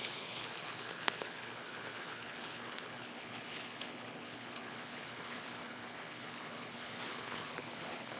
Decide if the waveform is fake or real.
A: fake